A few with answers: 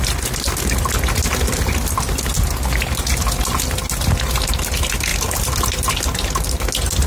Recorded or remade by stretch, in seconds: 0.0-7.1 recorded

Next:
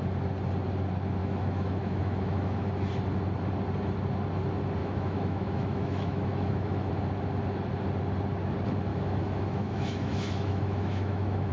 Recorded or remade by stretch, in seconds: 0.0-1.2 recorded; 1.2-2.7 remade; 2.7-4.8 recorded; 4.8-6.9 remade; 6.9-8.9 recorded; 8.9-11.5 remade

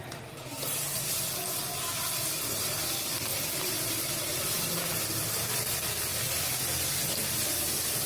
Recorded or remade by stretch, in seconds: 0.0-3.3 recorded; 3.3-4.7 remade; 4.7-8.1 recorded

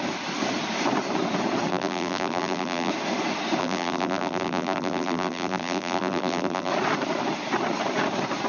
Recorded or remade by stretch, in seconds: 0.0-1.7 recorded; 1.7-2.9 remade; 2.9-3.6 recorded; 3.6-6.7 remade; 6.7-8.5 recorded

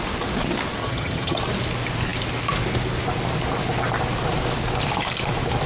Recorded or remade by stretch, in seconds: 0.0-0.8 recorded; 0.8-1.4 remade; 1.4-5.7 recorded